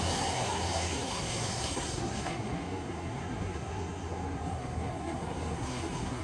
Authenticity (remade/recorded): remade